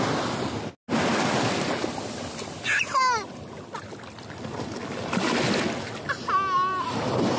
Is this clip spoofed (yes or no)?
no